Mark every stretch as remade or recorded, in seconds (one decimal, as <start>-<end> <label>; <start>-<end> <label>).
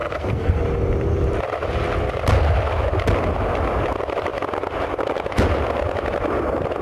0.0-0.6 remade; 0.6-6.8 recorded